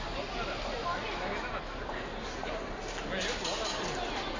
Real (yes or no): yes